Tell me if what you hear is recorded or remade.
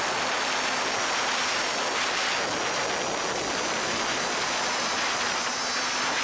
recorded